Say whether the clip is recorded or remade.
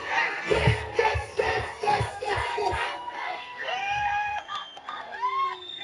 remade